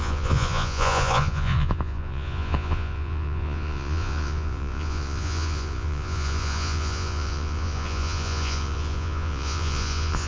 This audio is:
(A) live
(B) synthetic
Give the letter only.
B